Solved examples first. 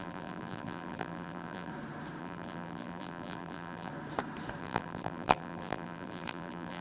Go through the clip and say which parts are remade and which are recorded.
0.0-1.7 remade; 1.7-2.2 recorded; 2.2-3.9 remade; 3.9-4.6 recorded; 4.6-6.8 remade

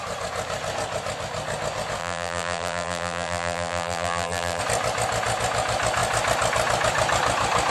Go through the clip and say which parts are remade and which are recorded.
0.0-2.0 recorded; 2.0-4.6 remade; 4.6-7.7 recorded

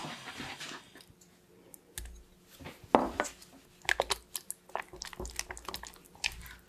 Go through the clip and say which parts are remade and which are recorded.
0.0-6.7 recorded

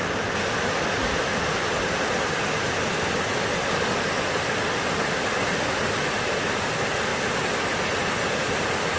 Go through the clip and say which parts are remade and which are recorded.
0.0-9.0 recorded

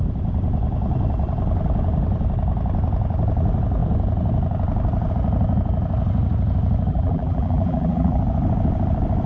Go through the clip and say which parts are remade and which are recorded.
0.0-6.9 recorded; 6.9-8.2 remade; 8.2-9.3 recorded

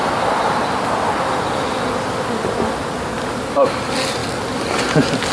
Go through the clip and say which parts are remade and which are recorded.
0.0-5.3 recorded

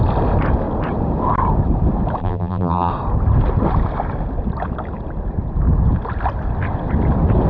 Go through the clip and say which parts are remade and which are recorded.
0.0-2.2 recorded; 2.2-2.9 remade; 2.9-7.5 recorded

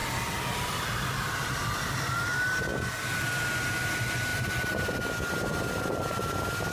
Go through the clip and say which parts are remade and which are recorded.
0.0-1.6 remade; 1.6-4.3 recorded; 4.3-5.0 remade; 5.0-6.7 recorded